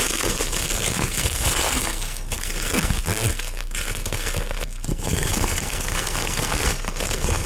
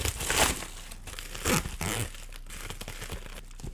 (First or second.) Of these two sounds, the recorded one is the second